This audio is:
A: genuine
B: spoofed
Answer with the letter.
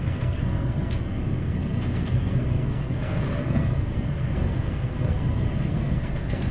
B